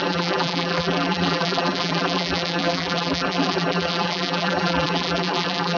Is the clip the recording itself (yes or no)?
no